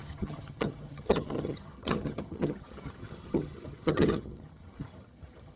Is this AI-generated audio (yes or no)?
yes